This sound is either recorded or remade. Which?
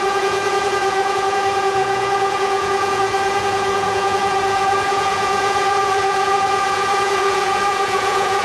remade